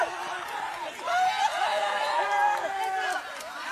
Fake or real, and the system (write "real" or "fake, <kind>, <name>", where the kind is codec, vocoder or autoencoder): real